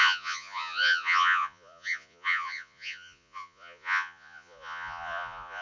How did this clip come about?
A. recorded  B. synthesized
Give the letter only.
B